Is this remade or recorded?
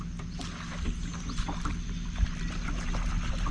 recorded